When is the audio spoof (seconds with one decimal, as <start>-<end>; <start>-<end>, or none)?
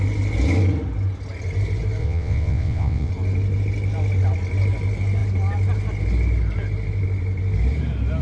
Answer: 2.0-3.1